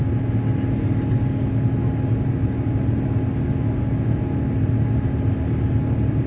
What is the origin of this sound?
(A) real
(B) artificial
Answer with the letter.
A